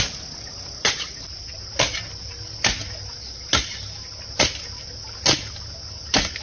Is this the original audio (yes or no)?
yes